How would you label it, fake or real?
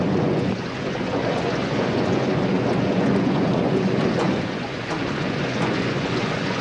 fake